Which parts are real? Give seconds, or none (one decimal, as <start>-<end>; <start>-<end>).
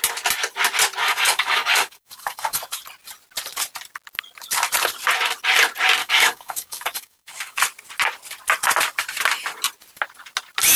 0.0-1.0; 2.8-6.0; 7.6-10.8